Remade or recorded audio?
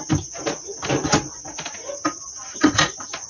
recorded